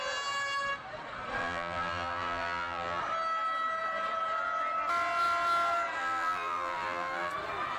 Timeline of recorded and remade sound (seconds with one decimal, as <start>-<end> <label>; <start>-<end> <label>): 0.0-1.4 recorded; 1.4-3.0 remade; 3.0-6.0 recorded; 6.0-7.3 remade; 7.3-7.8 recorded